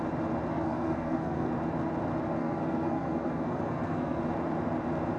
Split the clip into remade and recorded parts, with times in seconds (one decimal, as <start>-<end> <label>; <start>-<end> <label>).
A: 0.0-0.5 recorded; 0.5-1.5 remade; 1.5-2.4 recorded; 2.4-4.2 remade; 4.2-5.2 recorded